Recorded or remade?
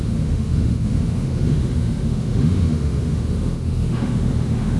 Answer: remade